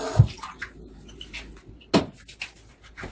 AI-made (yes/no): no